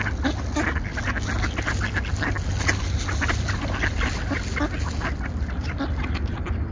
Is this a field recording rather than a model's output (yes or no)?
yes